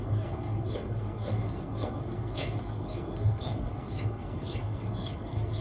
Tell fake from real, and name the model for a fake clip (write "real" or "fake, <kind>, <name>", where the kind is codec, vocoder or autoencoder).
fake, codec, SNAC